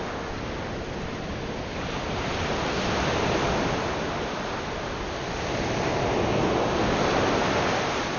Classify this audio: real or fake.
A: real